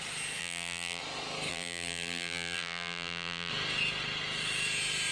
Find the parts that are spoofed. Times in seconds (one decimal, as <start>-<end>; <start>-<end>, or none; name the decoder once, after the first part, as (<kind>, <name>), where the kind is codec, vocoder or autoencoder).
0.4-1.0 (vocoder, BigVGAN v2); 1.5-3.5